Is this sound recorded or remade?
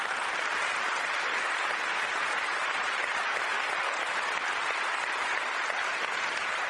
recorded